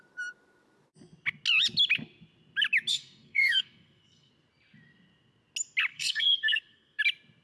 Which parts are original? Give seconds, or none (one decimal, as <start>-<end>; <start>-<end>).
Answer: 0.0-2.9; 4.3-5.9; 7.0-7.4